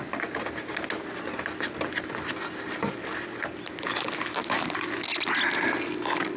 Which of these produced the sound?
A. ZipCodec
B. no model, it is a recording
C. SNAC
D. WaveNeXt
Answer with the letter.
B